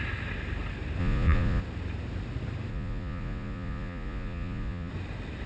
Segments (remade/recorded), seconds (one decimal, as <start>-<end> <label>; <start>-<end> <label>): 0.0-1.0 recorded; 1.0-1.6 remade; 1.6-2.7 recorded; 2.7-4.9 remade; 4.9-5.5 recorded